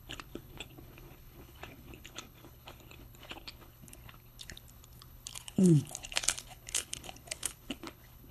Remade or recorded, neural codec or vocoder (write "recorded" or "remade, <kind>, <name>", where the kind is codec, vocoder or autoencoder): remade, codec, HILCodec